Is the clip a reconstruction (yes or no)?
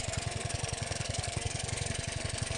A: yes